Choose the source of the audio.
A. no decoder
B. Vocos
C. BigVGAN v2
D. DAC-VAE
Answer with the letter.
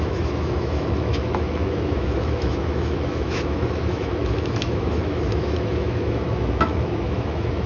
D